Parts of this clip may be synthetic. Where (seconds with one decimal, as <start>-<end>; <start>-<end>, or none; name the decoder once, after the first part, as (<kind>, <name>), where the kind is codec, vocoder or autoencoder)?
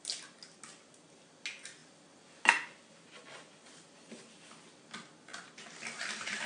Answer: none